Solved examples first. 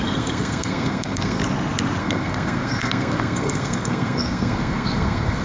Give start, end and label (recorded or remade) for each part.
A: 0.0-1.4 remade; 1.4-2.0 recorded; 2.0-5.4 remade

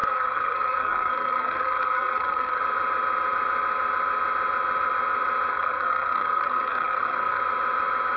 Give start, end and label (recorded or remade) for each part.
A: 0.0-2.6 remade; 2.6-5.5 recorded; 5.5-7.4 remade; 7.4-8.2 recorded

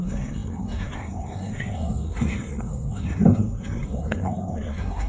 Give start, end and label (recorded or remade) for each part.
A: 0.0-5.1 remade

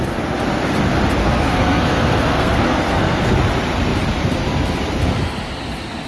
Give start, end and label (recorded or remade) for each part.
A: 0.0-1.2 recorded; 1.2-3.4 remade; 3.4-6.1 recorded